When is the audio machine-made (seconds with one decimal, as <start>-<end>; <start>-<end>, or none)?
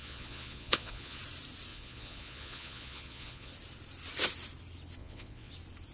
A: 0.0-1.2; 1.7-3.5; 5.0-5.5